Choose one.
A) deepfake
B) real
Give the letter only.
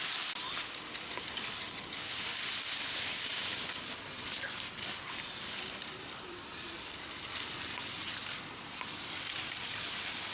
B